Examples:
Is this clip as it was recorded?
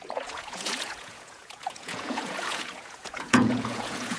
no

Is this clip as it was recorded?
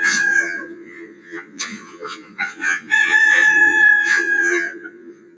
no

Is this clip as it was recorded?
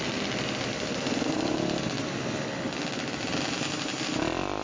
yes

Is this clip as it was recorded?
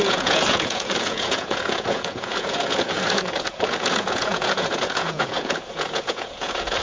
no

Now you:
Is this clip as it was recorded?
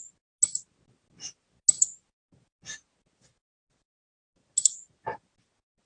yes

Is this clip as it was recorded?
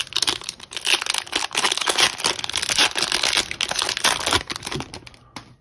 yes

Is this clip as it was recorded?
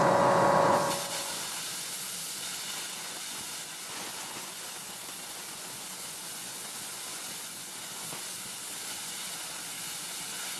no